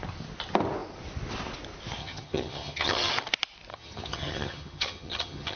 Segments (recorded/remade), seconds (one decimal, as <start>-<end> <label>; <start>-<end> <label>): 0.0-2.0 recorded; 2.0-3.1 remade; 3.1-3.7 recorded; 3.7-5.6 remade